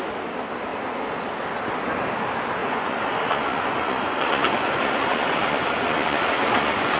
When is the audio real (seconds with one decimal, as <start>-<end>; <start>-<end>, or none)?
0.0-2.6